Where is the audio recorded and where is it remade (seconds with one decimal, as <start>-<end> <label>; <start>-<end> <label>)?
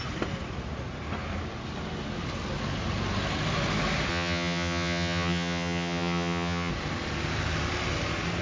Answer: 0.0-4.1 recorded; 4.1-6.7 remade; 6.7-8.4 recorded